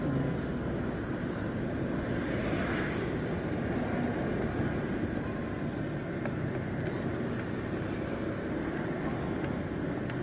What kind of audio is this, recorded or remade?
recorded